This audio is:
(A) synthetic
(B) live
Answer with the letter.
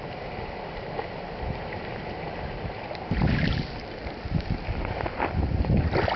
B